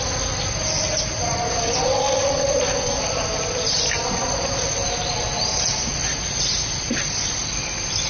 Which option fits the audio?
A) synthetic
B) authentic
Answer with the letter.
A